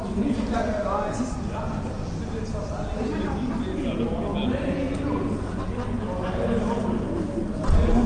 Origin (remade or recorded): recorded